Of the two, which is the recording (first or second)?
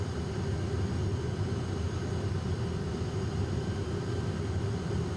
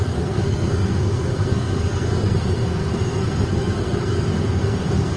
first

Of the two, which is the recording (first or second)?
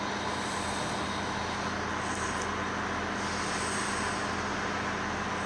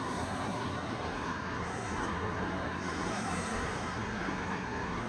first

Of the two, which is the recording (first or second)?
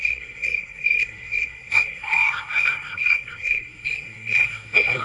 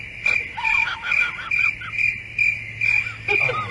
second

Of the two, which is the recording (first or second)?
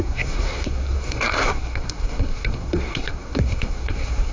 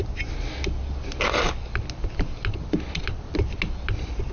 second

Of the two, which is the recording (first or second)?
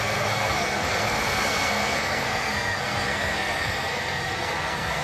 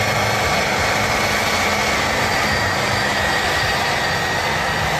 second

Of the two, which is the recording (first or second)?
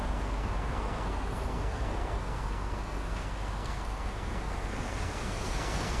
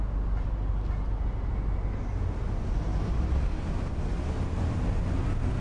second